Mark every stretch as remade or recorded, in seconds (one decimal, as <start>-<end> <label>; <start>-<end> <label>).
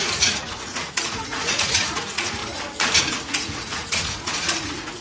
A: 0.0-2.4 remade; 2.4-3.0 recorded; 3.0-5.0 remade